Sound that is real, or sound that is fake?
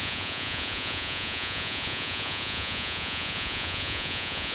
fake